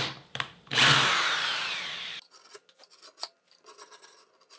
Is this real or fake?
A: fake